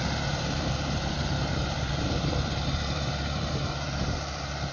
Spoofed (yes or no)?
yes